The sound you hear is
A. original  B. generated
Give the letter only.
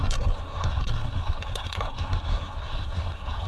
B